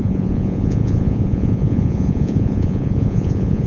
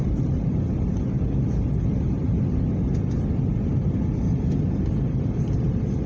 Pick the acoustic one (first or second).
second